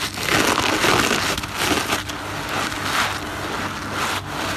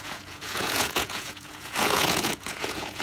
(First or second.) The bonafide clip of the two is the first